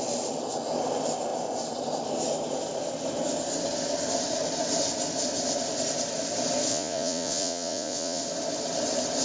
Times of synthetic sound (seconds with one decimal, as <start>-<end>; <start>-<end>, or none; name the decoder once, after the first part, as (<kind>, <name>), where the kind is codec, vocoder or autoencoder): 6.7-8.2 (vocoder, Vocos)